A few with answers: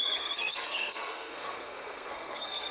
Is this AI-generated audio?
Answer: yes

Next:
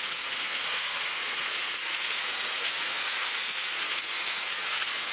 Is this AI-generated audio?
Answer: yes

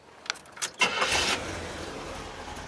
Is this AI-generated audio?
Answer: no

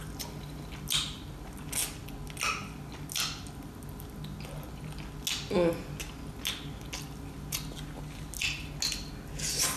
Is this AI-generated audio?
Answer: no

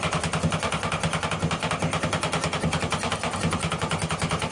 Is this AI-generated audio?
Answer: no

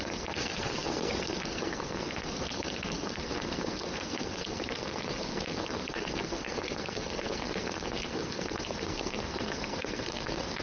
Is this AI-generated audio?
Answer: yes